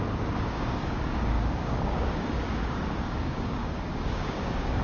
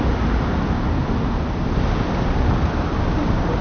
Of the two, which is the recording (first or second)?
second